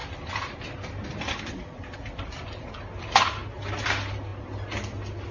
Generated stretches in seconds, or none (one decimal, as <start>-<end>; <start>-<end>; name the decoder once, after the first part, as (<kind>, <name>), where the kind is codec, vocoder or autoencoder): none